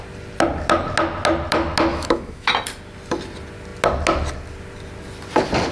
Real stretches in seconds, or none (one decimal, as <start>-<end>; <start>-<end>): 0.0-1.9; 2.5-5.7